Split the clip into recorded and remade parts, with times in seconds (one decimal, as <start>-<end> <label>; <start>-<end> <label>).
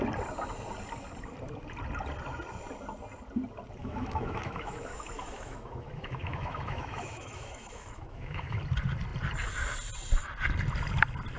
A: 0.0-3.8 recorded; 3.8-8.6 remade; 8.6-11.4 recorded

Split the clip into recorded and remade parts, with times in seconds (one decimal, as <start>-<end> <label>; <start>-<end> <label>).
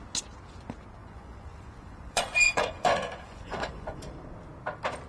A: 0.0-1.0 recorded; 1.0-4.1 remade; 4.1-5.1 recorded